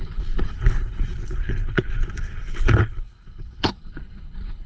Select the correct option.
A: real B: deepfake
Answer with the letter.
B